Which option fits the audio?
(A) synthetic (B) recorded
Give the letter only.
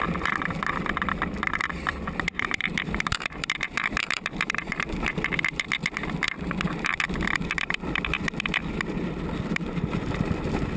A